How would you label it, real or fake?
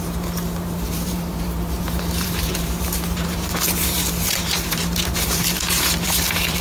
fake